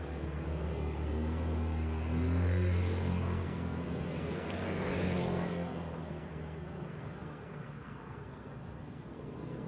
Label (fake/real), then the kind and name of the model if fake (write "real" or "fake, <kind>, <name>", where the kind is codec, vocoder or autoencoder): fake, codec, SNAC